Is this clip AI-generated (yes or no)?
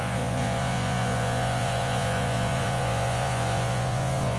yes